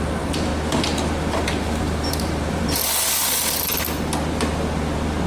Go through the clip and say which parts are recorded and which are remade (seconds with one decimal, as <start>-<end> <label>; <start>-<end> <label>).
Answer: 0.0-0.5 remade; 0.5-1.3 recorded; 1.3-2.8 remade; 2.8-5.3 recorded